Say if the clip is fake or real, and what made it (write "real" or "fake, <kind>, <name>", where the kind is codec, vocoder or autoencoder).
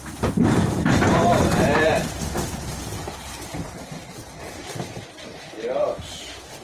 fake, vocoder, BigVGAN v2